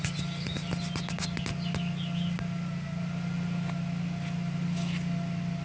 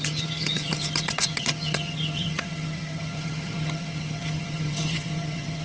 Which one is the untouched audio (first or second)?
first